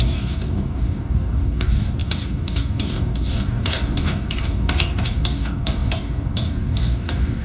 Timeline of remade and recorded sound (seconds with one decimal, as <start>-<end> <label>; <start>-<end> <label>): 0.0-7.4 remade